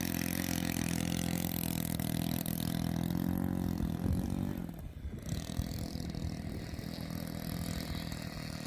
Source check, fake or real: real